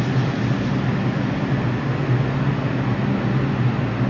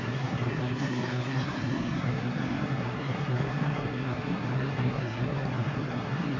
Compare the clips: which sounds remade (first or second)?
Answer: second